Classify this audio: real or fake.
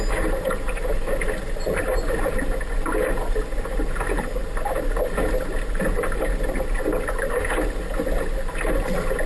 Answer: real